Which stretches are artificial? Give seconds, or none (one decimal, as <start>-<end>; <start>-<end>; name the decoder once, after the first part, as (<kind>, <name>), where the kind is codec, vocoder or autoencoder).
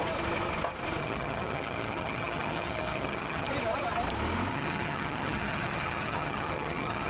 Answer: 1.0-3.5 (vocoder, HiFi-GAN); 4.5-7.1